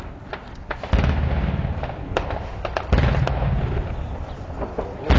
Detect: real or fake real